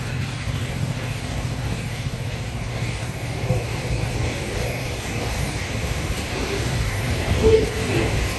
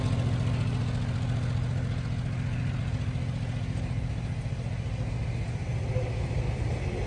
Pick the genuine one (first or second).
second